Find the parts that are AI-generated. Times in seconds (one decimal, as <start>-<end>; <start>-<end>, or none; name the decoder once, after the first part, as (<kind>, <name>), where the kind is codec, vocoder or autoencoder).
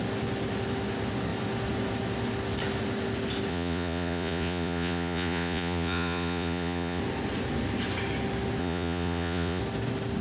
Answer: 3.5-7.0 (vocoder, Vocos); 8.6-9.6